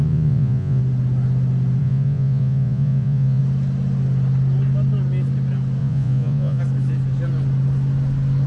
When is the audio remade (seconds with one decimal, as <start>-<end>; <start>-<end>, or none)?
0.0-0.8; 1.8-3.4; 5.8-6.6